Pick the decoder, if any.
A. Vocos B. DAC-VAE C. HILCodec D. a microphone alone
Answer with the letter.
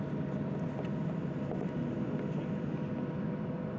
D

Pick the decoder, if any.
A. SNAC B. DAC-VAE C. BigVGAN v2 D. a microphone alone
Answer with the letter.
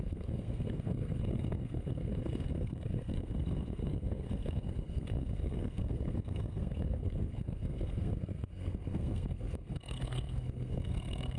A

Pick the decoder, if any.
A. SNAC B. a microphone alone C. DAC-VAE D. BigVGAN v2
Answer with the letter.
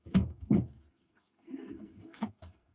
A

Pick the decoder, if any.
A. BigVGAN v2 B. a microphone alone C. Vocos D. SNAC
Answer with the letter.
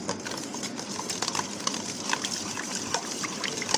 B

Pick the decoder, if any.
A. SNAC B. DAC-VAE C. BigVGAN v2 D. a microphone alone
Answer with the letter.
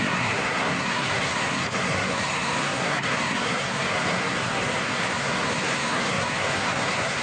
A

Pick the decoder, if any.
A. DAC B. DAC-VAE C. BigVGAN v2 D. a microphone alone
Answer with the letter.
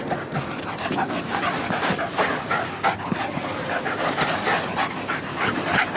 D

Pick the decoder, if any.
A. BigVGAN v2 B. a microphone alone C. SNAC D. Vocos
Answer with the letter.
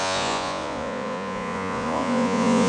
D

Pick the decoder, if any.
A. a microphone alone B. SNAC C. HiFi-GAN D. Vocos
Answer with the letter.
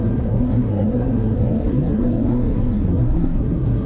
B